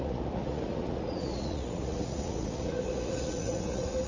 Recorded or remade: remade